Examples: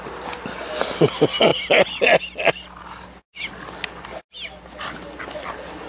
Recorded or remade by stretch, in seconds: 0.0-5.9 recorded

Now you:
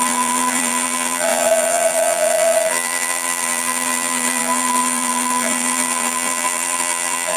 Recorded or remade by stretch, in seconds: 0.0-7.4 remade

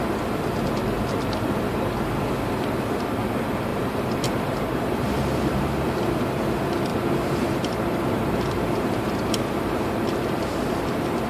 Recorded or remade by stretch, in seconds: 0.0-3.7 recorded; 3.7-5.6 remade; 5.6-6.9 recorded; 6.9-9.8 remade; 9.8-11.3 recorded

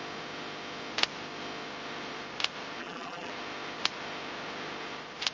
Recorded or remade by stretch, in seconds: 0.0-2.8 recorded; 2.8-3.3 remade; 3.3-5.3 recorded